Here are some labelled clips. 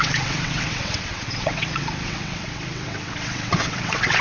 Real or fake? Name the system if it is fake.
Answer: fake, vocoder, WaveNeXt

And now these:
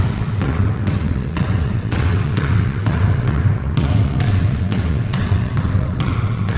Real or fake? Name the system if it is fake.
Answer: fake, vocoder, WaveNeXt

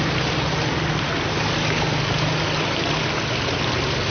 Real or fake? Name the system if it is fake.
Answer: real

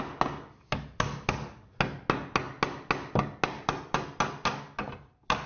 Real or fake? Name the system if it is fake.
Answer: real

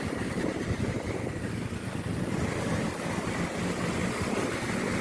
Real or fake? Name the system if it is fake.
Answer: real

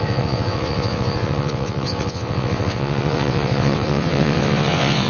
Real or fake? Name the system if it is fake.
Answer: fake, vocoder, WaveNeXt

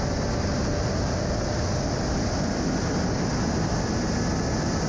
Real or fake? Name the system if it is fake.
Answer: real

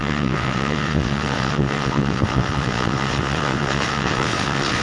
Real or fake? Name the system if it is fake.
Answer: fake, vocoder, WaveNeXt